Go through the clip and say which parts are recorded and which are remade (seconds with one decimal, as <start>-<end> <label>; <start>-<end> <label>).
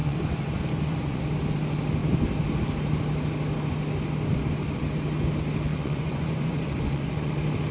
0.0-1.2 remade; 1.2-5.7 recorded; 5.7-7.3 remade; 7.3-7.7 recorded